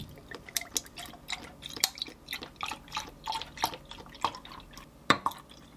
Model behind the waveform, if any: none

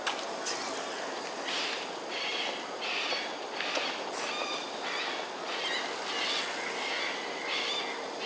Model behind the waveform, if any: none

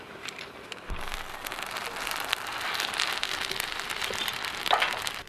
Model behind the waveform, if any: vocoder, BigVGAN v2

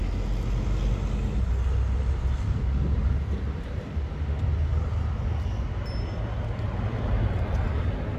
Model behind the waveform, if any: none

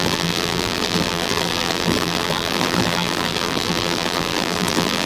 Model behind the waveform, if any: vocoder, BigVGAN v2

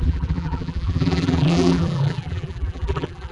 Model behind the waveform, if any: vocoder, BigVGAN v2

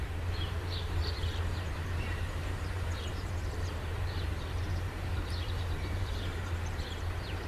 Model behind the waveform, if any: vocoder, BigVGAN v2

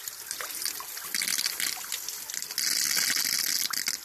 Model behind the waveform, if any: none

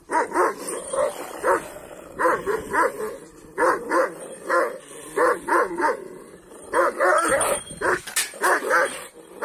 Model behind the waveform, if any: none